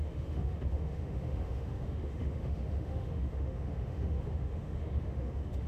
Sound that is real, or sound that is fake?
fake